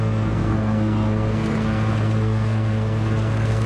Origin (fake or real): fake